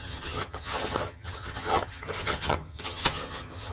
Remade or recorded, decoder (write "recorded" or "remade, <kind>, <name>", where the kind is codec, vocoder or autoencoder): remade, vocoder, HiFi-GAN